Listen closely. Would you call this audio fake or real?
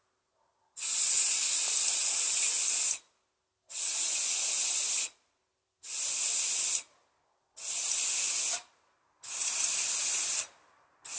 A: real